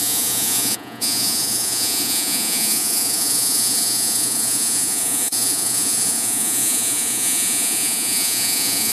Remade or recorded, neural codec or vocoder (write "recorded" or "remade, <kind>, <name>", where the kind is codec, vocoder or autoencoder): remade, vocoder, Vocos